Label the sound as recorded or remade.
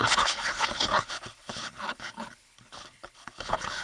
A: remade